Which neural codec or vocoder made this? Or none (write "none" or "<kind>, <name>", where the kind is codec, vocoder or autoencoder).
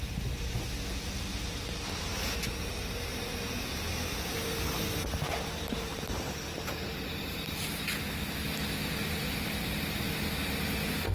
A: none